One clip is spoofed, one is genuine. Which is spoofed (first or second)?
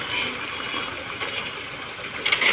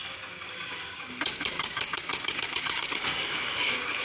second